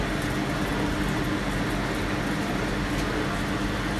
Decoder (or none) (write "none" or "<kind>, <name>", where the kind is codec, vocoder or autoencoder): none